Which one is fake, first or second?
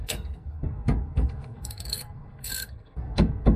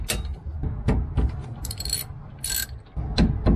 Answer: first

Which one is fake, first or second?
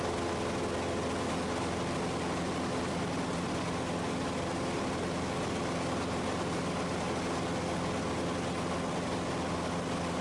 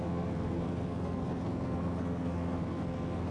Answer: second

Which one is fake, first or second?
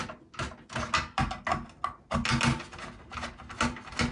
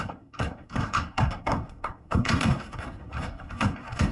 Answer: second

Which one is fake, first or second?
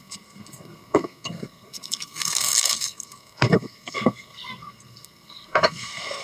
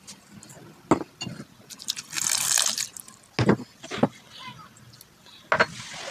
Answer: first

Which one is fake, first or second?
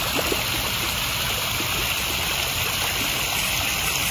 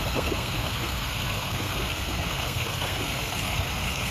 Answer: second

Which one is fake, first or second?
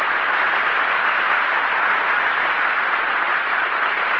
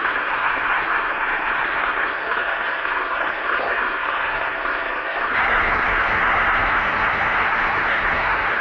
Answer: second